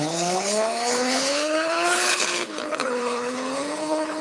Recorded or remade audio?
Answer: remade